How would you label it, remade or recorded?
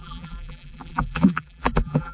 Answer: remade